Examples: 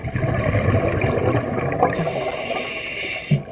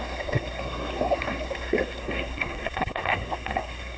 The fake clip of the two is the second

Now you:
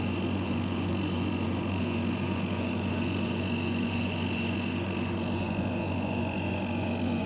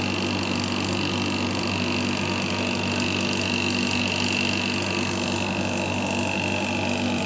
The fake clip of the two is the first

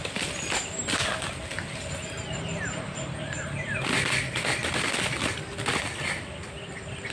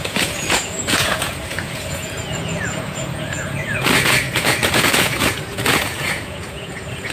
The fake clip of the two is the second